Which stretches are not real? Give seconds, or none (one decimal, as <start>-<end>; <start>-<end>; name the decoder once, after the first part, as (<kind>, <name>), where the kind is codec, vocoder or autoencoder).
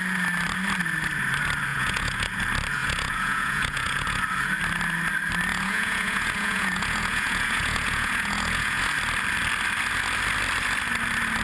1.7-2.4 (vocoder, Vocos); 2.8-4.2; 5.5-8.8